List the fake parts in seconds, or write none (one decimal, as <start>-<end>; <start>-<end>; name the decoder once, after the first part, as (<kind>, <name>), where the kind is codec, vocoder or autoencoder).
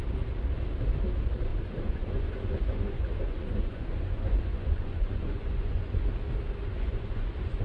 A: 1.5-6.1 (vocoder, Vocos); 6.7-7.6